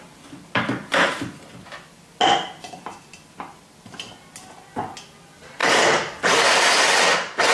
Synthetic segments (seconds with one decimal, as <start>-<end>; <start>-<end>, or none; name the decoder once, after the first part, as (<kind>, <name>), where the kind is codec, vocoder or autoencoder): none